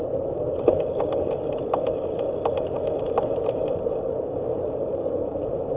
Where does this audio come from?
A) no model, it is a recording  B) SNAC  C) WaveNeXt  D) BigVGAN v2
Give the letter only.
A